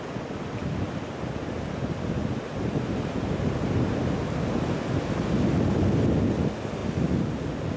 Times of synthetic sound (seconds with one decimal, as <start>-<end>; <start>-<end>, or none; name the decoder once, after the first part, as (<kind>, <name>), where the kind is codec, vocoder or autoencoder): none